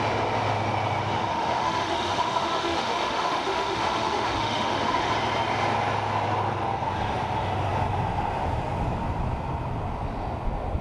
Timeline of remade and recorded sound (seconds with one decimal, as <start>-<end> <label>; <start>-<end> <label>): 0.0-1.3 recorded; 1.3-5.1 remade; 5.1-10.8 recorded